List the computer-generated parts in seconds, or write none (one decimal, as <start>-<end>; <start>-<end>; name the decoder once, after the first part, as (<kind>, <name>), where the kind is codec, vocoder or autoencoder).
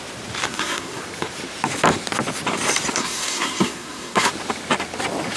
0.5-1.0 (codec, SNAC); 3.0-4.3